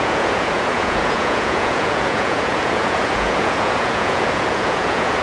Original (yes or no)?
no